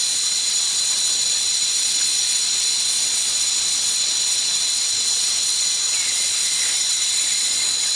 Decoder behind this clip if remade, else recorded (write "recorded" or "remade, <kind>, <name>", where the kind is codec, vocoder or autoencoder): remade, vocoder, Vocos